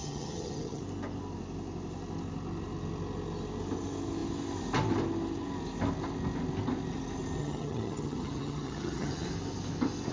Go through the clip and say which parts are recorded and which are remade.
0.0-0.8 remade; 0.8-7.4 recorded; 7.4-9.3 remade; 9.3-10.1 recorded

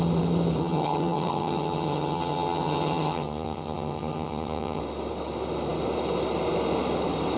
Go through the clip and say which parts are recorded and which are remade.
0.0-0.6 recorded; 0.6-4.8 remade; 4.8-7.4 recorded

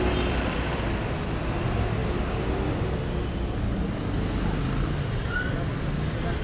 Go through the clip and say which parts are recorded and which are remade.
0.0-6.4 recorded

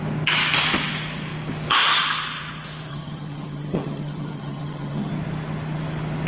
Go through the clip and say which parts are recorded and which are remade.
0.0-2.9 recorded; 2.9-5.1 remade; 5.1-6.3 recorded

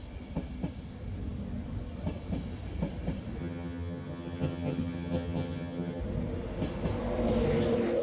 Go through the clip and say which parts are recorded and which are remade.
0.0-3.4 recorded; 3.4-6.0 remade; 6.0-8.0 recorded